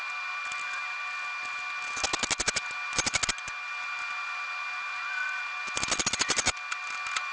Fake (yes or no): no